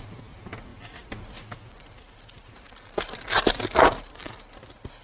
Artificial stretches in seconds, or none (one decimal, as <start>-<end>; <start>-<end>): none